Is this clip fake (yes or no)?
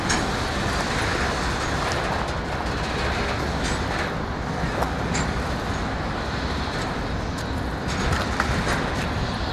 no